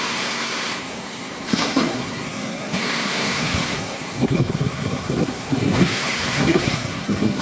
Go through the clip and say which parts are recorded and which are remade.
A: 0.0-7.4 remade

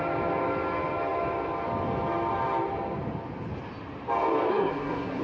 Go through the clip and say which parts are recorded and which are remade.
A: 0.0-4.5 recorded; 4.5-5.2 remade

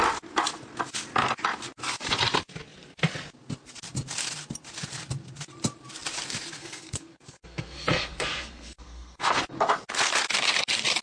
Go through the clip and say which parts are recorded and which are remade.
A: 0.0-6.6 recorded; 6.6-9.4 remade; 9.4-11.0 recorded

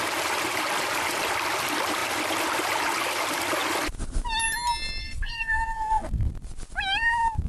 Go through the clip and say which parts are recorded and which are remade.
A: 0.0-5.0 recorded; 5.0-6.3 remade; 6.3-7.5 recorded

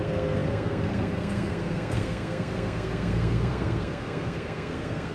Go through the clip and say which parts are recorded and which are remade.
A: 0.0-5.1 remade